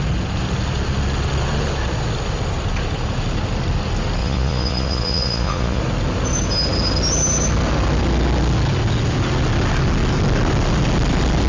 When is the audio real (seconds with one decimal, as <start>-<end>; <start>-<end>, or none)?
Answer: 0.0-4.2; 5.8-11.5